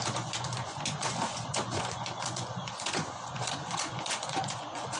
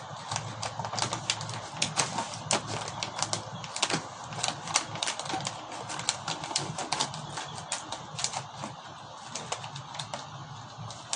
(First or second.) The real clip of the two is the second